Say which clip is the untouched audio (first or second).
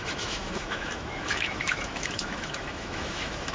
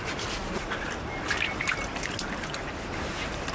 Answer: second